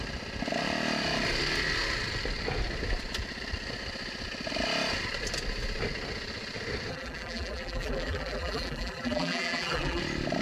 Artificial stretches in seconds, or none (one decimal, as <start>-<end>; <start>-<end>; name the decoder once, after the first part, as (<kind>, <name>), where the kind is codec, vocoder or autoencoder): 6.9-10.0 (vocoder, BigVGAN v2)